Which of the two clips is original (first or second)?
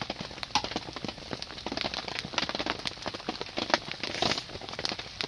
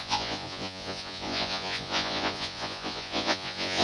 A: first